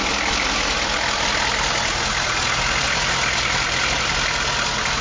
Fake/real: real